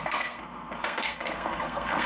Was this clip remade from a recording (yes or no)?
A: yes